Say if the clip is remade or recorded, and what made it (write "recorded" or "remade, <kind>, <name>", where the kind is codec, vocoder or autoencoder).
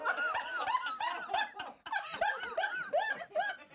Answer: recorded